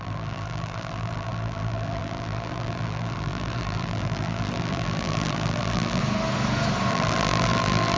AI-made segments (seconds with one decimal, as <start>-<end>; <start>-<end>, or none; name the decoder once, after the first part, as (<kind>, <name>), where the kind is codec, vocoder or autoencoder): 0.0-6.0 (vocoder, BigVGAN v2); 6.9-8.0